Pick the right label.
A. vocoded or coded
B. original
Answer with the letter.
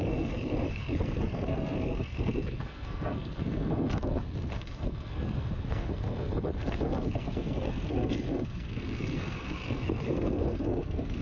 A